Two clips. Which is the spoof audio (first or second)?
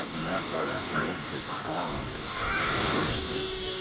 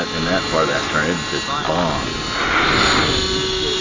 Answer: first